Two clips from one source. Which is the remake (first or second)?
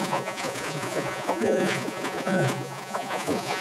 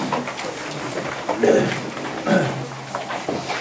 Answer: first